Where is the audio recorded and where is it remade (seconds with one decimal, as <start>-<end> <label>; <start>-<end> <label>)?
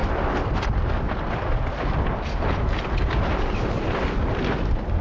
0.0-5.0 recorded